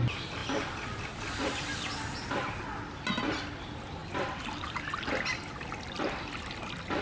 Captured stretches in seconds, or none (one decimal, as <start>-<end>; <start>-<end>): 0.0-7.0